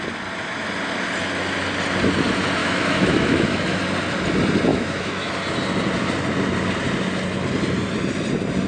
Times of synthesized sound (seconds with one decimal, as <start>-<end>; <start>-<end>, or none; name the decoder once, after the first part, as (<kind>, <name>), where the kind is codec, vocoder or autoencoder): 2.6-3.8 (autoencoder, DAC-VAE); 4.7-5.3

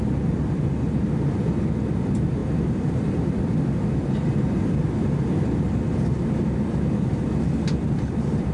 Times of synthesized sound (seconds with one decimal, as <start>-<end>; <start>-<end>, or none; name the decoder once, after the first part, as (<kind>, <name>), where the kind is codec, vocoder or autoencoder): 2.4-3.4 (vocoder, BigVGAN v2)

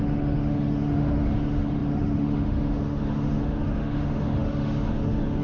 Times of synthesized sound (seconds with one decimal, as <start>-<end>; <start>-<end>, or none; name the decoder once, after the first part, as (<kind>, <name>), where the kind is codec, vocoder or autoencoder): 0.0-5.4 (autoencoder, DAC-VAE)

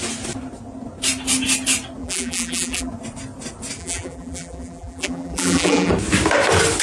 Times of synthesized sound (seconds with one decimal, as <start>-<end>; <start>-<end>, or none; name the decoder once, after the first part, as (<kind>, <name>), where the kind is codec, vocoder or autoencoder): 2.0-2.9 (vocoder, BigVGAN v2); 3.8-5.9

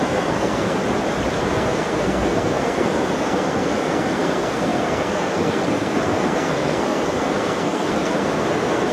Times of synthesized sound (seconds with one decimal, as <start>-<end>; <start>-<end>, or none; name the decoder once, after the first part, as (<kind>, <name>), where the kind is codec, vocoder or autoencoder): 0.0-0.8 (codec, SNAC); 1.4-8.9

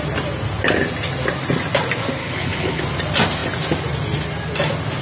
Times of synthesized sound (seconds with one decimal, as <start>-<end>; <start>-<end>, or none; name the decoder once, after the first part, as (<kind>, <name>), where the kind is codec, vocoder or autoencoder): 2.2-2.8 (codec, HILCodec)

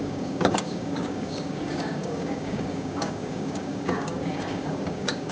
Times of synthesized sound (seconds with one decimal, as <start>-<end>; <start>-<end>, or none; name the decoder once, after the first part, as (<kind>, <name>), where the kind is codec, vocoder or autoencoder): 0.0-5.3 (codec, DAC)